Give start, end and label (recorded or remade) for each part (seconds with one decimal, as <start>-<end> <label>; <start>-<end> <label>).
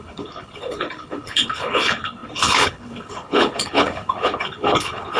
0.0-5.2 remade